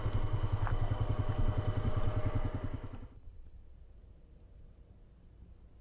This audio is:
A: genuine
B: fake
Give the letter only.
A